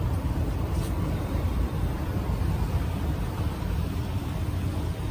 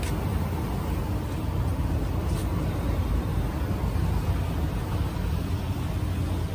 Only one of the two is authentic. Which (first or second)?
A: second